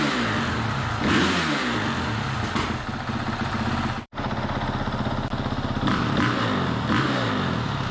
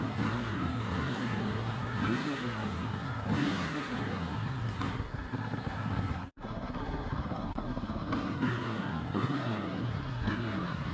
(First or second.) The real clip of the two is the first